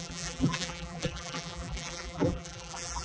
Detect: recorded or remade remade